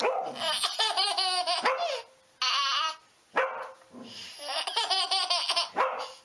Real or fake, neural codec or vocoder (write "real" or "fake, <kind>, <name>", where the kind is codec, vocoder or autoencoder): real